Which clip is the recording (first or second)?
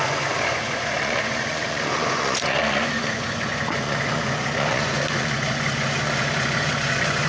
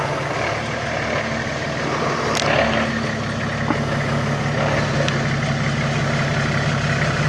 second